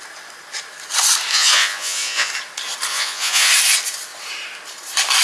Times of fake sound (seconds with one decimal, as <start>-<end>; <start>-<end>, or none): 1.3-2.3; 2.9-3.5